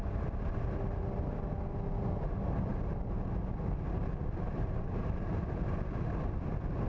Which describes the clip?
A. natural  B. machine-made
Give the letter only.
A